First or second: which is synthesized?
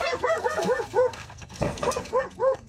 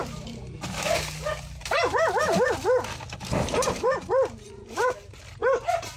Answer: first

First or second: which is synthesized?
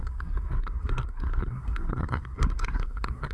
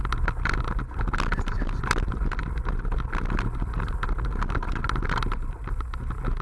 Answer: first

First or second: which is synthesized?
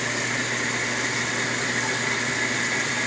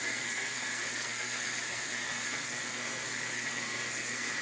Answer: second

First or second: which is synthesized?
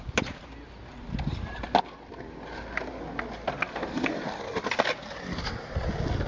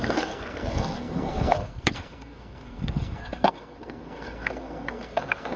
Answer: second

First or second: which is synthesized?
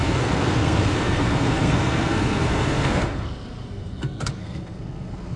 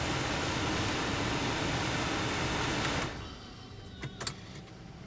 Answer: first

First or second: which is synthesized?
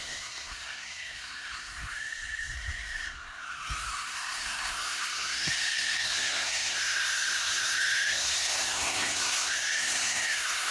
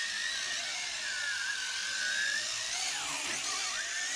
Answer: first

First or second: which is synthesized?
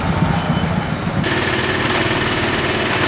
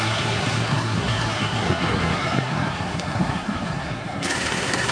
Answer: second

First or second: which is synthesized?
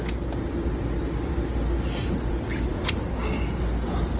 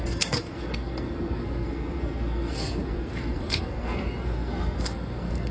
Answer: second